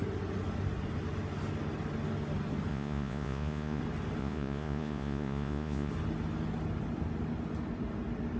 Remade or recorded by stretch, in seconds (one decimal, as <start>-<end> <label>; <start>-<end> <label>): 0.0-2.7 recorded; 2.7-3.8 remade; 3.8-4.2 recorded; 4.2-5.9 remade; 5.9-8.4 recorded